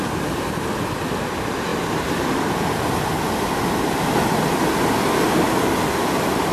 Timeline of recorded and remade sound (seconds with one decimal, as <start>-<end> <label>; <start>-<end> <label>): 0.0-6.5 recorded